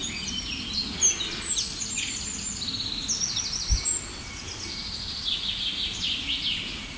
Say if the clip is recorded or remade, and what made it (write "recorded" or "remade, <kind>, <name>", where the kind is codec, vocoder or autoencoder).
recorded